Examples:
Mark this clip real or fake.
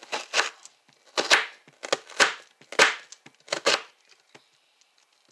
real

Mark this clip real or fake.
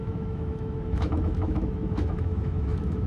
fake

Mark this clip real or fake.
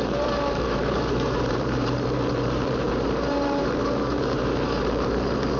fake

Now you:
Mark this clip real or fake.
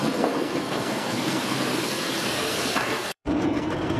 fake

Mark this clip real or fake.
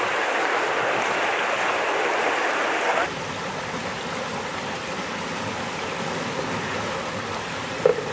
real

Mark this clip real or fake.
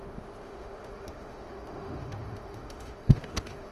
fake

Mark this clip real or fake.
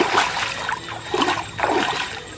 real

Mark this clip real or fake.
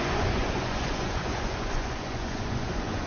fake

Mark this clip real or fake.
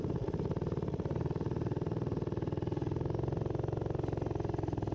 real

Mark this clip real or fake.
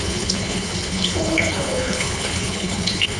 fake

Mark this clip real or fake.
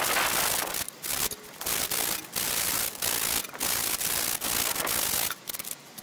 real